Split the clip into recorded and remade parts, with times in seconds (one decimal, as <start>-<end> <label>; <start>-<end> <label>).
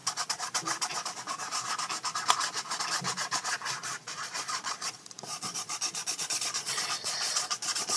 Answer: 0.0-3.8 recorded; 3.8-8.0 remade